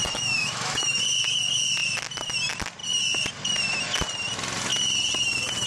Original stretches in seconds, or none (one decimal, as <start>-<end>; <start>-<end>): 1.0-5.7